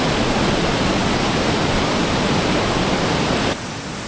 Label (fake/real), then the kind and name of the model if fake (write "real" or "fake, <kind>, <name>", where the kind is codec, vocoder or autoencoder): real